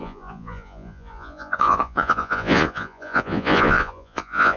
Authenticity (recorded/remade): remade